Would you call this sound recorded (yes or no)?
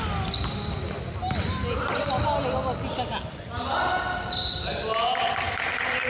yes